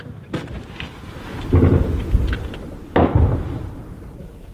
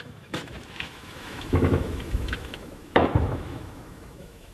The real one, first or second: first